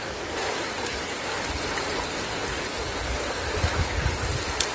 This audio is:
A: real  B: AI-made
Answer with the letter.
A